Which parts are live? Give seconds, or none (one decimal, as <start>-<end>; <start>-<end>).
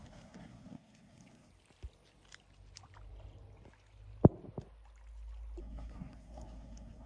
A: 1.5-5.6